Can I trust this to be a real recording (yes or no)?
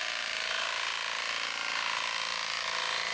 yes